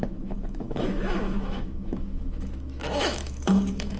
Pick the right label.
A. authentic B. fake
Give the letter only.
B